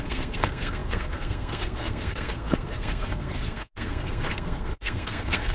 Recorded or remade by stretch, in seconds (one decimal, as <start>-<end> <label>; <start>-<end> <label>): 0.0-5.5 remade